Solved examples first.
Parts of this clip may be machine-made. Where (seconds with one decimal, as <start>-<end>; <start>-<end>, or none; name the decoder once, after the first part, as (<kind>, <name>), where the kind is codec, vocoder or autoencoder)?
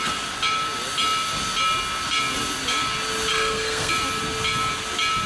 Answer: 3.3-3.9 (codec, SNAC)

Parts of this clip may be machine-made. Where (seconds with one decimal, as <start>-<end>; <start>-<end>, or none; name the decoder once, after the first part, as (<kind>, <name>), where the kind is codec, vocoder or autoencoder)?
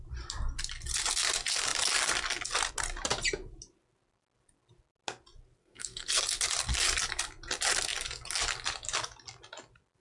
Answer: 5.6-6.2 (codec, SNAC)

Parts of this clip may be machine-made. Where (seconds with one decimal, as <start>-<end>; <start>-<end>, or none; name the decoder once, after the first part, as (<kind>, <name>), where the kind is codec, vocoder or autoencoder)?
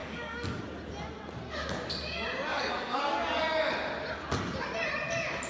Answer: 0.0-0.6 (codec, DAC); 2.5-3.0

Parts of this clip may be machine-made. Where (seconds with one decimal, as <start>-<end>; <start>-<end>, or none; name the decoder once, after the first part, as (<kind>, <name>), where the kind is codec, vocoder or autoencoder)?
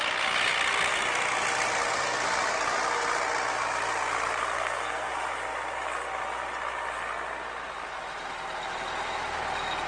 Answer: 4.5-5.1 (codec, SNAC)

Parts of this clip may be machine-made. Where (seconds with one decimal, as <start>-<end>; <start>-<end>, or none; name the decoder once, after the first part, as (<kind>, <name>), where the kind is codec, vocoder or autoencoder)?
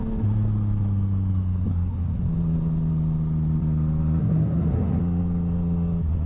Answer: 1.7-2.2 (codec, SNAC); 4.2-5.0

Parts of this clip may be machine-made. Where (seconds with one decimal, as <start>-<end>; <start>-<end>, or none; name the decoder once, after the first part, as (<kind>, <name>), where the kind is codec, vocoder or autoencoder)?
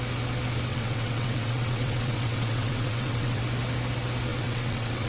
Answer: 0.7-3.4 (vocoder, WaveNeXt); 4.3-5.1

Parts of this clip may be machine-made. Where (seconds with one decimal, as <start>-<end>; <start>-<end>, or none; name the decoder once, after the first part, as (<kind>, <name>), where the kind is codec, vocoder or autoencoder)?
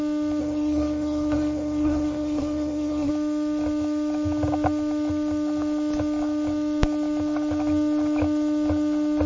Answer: 0.4-3.1 (codec, SNAC)